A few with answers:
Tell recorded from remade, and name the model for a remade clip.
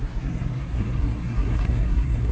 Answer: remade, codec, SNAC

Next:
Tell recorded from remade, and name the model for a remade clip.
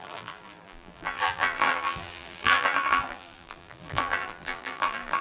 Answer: remade, vocoder, BigVGAN v2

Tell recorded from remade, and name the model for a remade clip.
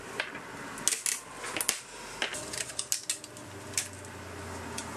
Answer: recorded